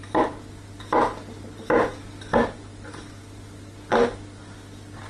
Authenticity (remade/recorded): recorded